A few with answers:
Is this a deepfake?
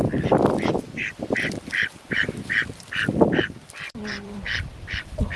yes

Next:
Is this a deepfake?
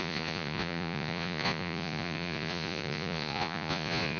yes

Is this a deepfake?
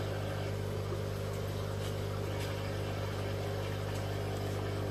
no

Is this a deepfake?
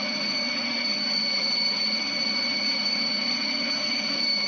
yes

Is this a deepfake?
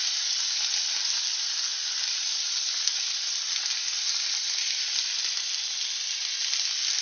no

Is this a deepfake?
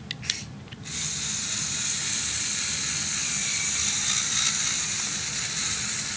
no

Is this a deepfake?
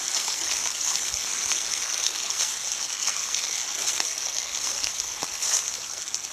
yes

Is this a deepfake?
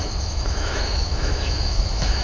yes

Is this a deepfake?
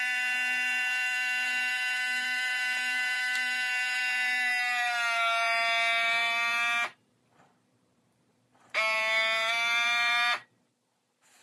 yes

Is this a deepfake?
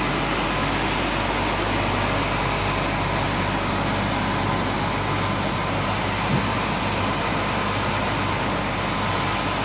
no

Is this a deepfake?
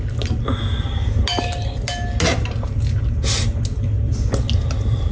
no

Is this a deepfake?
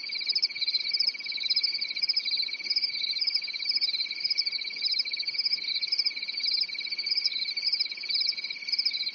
no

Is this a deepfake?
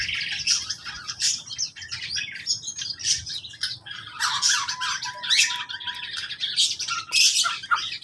no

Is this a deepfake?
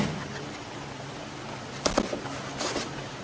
no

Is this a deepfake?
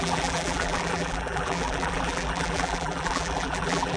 yes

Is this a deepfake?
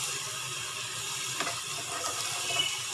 yes